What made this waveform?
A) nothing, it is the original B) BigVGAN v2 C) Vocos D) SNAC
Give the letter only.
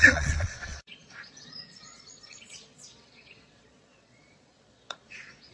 C